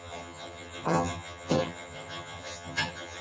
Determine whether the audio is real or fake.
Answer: fake